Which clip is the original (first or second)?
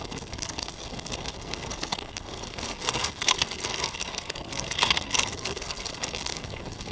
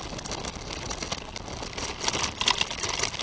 second